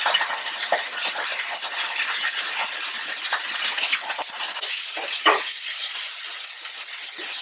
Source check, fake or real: real